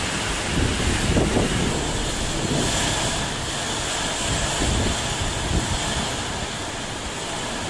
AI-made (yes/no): no